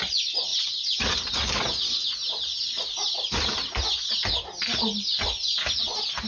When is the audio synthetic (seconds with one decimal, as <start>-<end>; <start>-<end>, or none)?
none

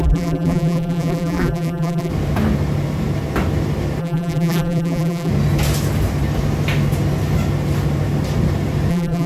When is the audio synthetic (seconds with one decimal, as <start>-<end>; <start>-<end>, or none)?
0.0-2.1; 4.0-5.3; 8.9-9.3